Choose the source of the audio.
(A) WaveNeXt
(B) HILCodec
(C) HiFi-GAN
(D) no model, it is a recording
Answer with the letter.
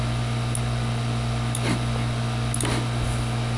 D